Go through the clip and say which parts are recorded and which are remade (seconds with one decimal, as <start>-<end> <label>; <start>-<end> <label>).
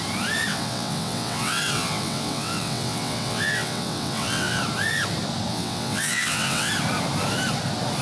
0.0-0.5 recorded; 0.5-4.6 remade; 4.6-5.5 recorded; 5.5-6.7 remade; 6.7-8.0 recorded